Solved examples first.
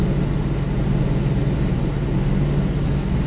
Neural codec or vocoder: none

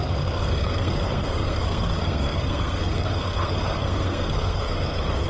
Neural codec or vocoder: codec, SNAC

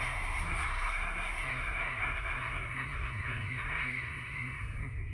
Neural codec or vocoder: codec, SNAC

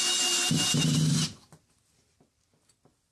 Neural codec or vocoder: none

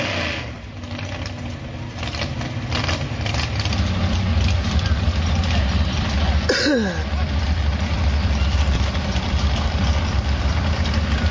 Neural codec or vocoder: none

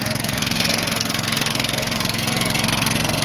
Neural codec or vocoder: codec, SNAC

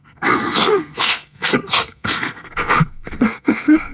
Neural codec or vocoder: codec, SNAC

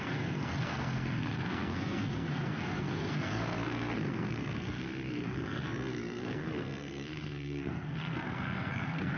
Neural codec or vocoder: codec, SNAC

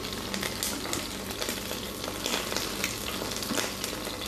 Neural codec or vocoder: none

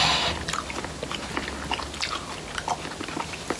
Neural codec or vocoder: none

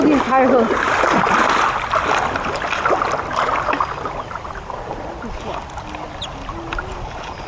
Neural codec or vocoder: none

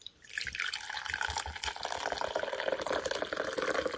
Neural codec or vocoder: none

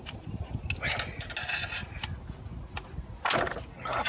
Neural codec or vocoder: none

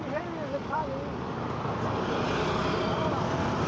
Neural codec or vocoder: none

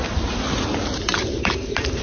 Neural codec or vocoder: none